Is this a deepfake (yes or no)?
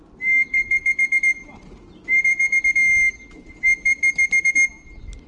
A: no